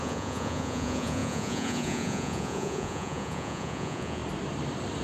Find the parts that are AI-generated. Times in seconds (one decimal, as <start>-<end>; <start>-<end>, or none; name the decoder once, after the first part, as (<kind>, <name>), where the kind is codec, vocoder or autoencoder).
0.0-4.2 (vocoder, Vocos)